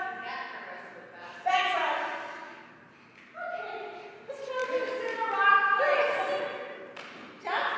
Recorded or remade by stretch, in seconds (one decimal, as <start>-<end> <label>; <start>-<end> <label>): 0.0-7.8 recorded